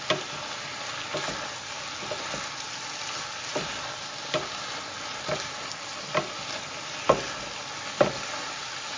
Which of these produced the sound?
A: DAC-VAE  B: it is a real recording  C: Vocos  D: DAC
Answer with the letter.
B